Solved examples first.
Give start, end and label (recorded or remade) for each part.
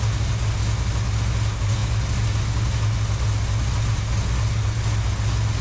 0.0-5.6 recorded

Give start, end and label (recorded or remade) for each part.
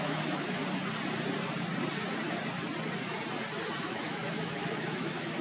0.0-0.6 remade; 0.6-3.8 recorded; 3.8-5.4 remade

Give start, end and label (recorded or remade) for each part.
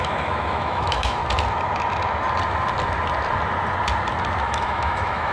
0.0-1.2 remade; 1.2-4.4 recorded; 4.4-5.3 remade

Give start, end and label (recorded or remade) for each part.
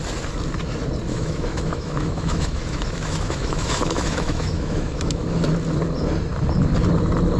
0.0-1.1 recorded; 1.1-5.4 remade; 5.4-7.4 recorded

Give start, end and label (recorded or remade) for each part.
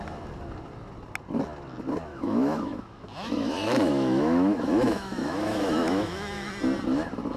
0.0-2.1 recorded; 2.1-6.5 remade; 6.5-7.4 recorded